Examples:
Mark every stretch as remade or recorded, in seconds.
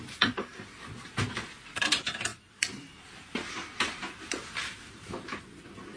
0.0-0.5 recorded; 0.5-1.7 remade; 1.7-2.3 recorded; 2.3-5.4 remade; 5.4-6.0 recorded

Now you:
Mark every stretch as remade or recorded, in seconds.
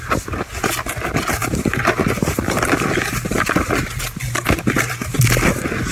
0.0-5.9 recorded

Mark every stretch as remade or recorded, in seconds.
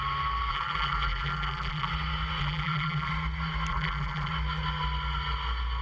0.0-0.5 recorded; 0.5-1.9 remade; 1.9-2.4 recorded; 2.4-3.1 remade; 3.1-3.7 recorded; 3.7-4.3 remade; 4.3-5.8 recorded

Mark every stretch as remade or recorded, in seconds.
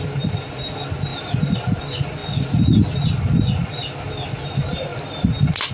0.0-5.7 recorded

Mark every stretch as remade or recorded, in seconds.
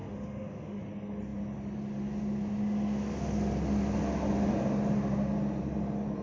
0.0-0.8 remade; 0.8-6.2 recorded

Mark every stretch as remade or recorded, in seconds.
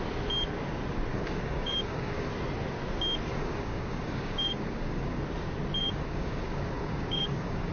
0.0-1.1 recorded; 1.1-2.3 remade; 2.3-3.3 recorded; 3.3-5.2 remade; 5.2-5.8 recorded; 5.8-7.7 remade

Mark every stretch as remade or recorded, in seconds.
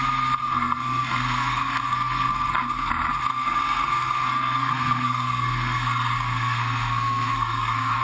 0.0-0.4 recorded; 0.4-2.9 remade; 2.9-3.3 recorded; 3.3-8.0 remade